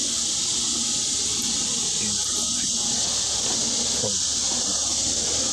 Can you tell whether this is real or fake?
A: real